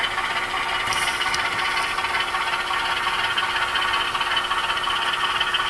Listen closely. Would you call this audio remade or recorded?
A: recorded